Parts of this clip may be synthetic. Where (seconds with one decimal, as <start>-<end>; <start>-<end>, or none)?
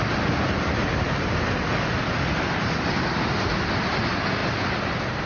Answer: none